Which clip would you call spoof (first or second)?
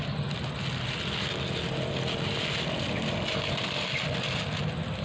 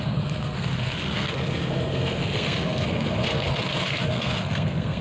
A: second